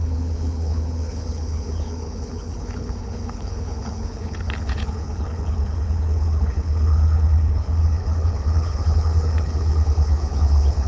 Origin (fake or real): fake